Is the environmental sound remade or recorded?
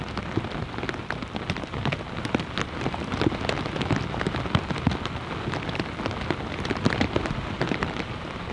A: recorded